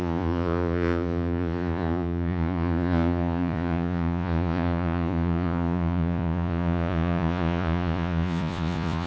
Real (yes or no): no